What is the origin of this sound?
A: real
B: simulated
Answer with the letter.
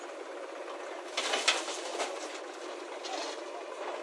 A